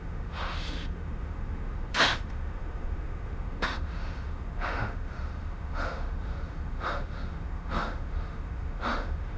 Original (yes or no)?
no